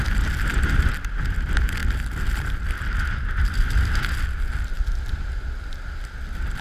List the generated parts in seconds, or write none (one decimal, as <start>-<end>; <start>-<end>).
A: none